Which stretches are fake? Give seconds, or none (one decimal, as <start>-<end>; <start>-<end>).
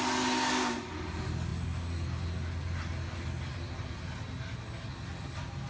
none